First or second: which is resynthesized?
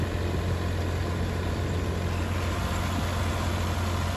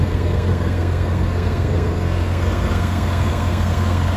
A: second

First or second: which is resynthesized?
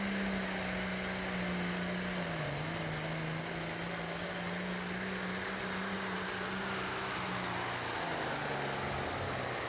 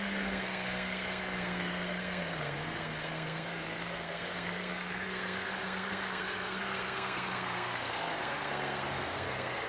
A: second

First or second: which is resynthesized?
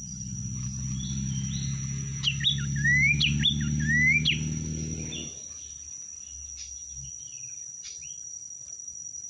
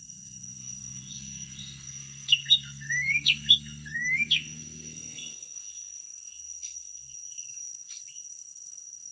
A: second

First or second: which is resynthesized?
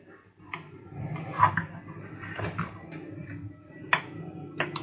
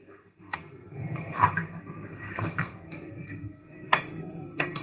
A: second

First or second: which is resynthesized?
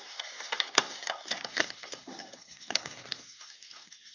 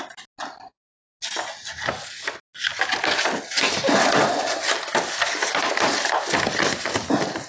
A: first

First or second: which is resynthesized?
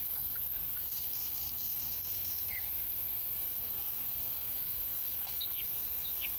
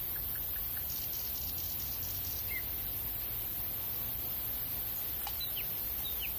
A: first